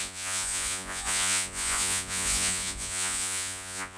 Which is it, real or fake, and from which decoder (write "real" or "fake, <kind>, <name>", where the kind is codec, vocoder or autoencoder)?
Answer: fake, vocoder, Vocos